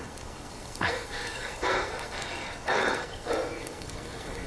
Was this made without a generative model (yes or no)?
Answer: no